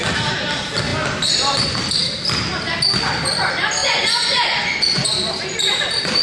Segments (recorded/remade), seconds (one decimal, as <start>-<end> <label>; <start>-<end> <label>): 0.0-3.8 recorded; 3.8-5.3 remade; 5.3-6.2 recorded